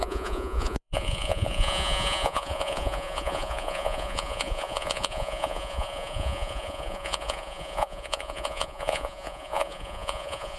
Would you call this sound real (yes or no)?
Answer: no